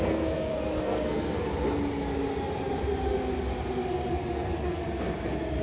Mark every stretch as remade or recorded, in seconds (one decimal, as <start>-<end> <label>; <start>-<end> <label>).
0.0-1.5 remade; 1.5-3.9 recorded; 3.9-4.8 remade; 4.8-5.6 recorded